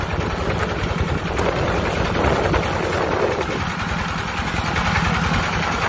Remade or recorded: recorded